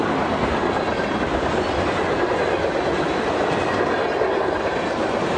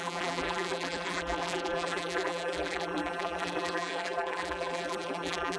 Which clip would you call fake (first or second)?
second